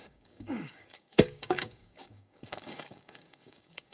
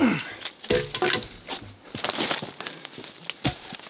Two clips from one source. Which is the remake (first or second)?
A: first